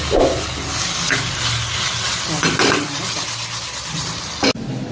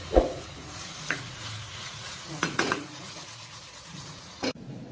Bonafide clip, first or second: first